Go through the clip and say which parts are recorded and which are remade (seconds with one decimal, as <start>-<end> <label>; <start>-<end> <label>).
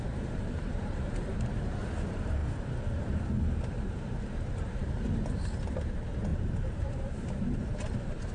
0.0-2.4 remade; 2.4-3.0 recorded; 3.0-8.3 remade